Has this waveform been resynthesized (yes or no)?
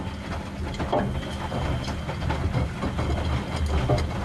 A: no